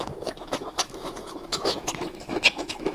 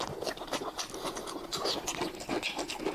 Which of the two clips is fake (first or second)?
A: first